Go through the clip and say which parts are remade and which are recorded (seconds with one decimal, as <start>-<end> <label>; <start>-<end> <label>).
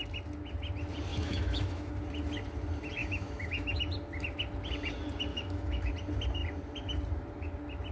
0.0-1.1 recorded; 1.1-1.9 remade; 1.9-3.0 recorded; 3.0-3.8 remade; 3.8-5.3 recorded; 5.3-5.9 remade; 5.9-7.9 recorded